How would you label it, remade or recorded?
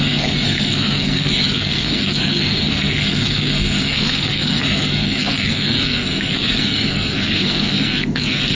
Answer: remade